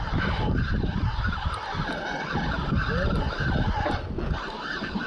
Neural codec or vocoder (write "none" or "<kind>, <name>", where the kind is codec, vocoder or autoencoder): none